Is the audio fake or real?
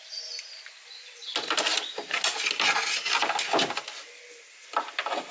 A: real